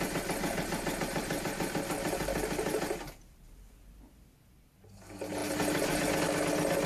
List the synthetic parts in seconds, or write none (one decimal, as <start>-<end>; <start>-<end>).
none